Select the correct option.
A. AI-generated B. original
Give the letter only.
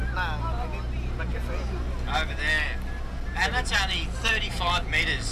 B